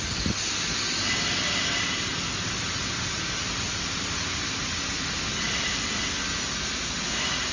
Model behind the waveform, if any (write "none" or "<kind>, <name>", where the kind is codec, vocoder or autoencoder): none